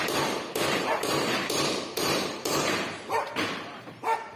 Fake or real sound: fake